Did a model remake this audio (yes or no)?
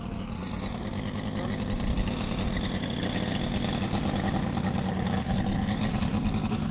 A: no